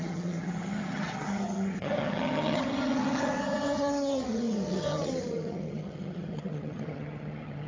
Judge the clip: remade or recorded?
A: remade